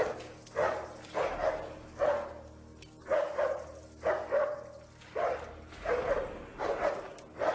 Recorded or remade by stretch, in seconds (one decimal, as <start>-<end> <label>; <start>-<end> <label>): 0.0-7.5 recorded